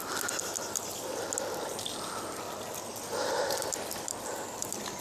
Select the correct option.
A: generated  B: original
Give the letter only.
B